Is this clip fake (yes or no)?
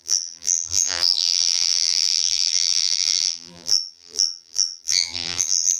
yes